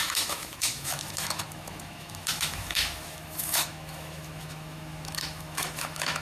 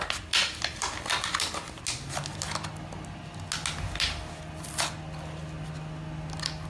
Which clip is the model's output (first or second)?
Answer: first